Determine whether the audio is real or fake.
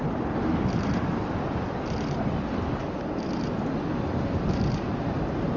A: real